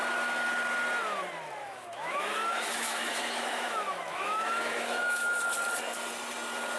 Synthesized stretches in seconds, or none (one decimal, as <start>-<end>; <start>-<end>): 1.6-5.4